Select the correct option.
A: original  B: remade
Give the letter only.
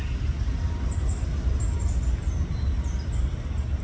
A